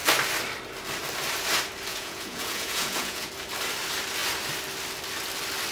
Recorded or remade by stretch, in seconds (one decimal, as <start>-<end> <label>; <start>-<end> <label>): 0.0-1.9 recorded; 1.9-3.3 remade; 3.3-5.7 recorded